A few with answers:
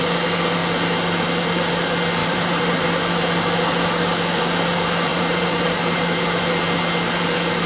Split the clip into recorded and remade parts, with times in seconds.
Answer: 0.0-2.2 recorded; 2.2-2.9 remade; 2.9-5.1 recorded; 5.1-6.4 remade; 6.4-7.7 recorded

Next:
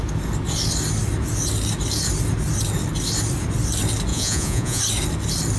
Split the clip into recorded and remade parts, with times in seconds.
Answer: 0.0-4.1 recorded; 4.1-4.8 remade; 4.8-5.6 recorded

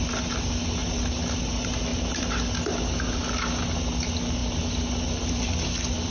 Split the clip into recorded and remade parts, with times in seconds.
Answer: 0.0-6.1 recorded

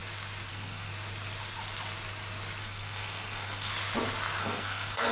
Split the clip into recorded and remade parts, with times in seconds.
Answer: 0.0-0.5 recorded; 0.5-0.9 remade; 0.9-2.6 recorded; 2.6-3.7 remade; 3.7-4.4 recorded; 4.4-5.1 remade

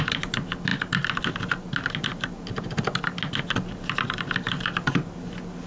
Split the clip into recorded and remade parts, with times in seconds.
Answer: 0.0-5.7 recorded